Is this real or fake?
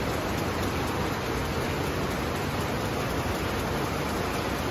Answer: real